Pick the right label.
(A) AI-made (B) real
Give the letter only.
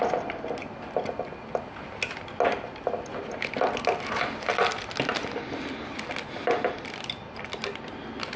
B